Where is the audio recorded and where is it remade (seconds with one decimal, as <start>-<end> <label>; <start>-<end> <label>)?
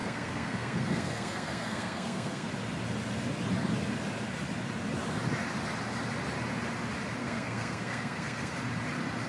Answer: 0.0-2.5 remade; 2.5-7.2 recorded; 7.2-8.5 remade; 8.5-9.3 recorded